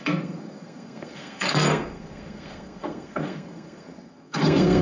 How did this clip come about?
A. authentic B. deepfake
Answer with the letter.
B